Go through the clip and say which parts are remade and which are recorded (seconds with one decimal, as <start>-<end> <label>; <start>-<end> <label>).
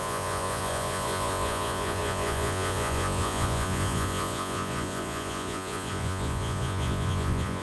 0.0-7.6 remade